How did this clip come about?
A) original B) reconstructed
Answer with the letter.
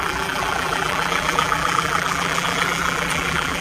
B